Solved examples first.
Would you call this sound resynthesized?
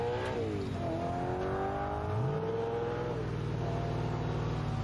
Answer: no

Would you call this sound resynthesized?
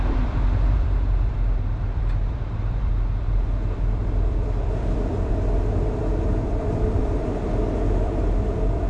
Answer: yes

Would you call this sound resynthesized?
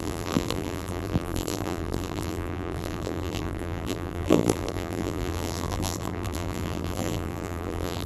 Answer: yes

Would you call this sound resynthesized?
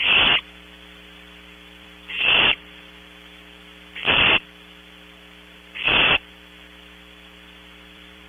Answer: yes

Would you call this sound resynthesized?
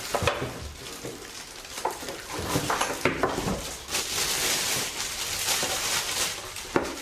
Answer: no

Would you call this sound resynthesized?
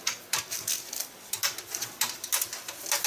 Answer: no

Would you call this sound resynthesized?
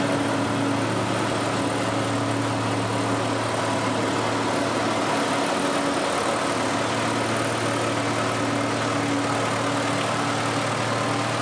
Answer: no